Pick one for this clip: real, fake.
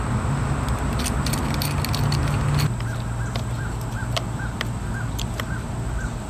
real